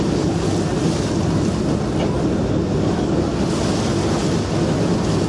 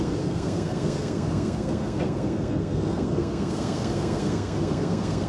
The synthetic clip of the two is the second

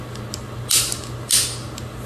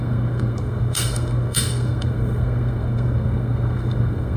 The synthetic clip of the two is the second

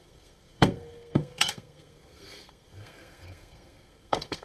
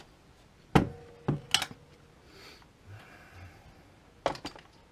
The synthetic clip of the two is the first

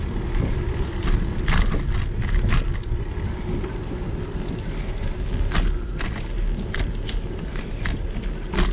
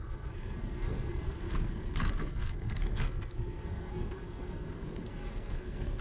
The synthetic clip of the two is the second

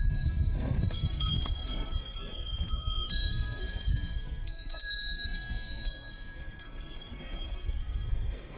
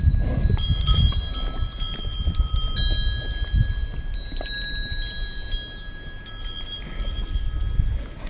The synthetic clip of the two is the first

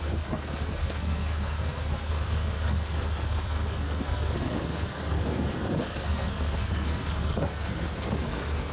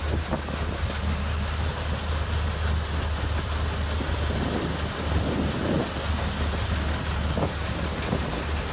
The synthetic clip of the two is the first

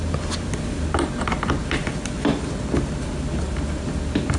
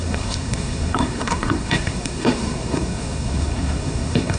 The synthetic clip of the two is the second